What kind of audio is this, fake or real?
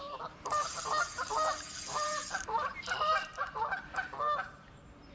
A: fake